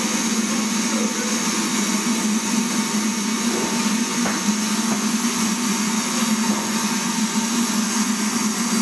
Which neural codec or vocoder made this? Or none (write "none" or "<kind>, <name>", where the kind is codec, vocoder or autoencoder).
vocoder, Vocos